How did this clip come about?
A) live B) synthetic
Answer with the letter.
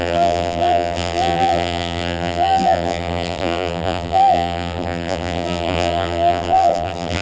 B